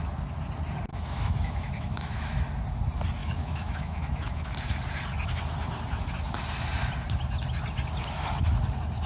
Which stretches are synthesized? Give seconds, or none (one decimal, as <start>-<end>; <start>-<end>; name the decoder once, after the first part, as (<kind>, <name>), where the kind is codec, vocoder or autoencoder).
0.9-2.4 (autoencoder, DAC-VAE); 3.2-4.5